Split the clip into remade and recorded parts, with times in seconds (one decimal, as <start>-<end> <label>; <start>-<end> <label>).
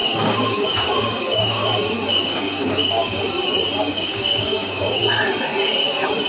0.0-1.6 remade; 1.6-2.2 recorded; 2.2-3.2 remade; 3.2-3.8 recorded; 3.8-5.0 remade; 5.0-6.3 recorded